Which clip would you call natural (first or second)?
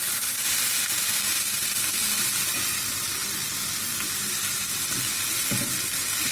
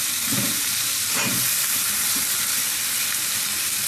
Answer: first